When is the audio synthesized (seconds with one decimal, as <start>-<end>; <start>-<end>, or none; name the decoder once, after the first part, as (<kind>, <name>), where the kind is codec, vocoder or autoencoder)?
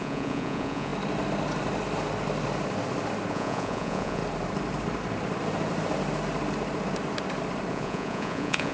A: 0.0-0.9 (vocoder, Vocos); 3.3-4.2; 7.7-8.7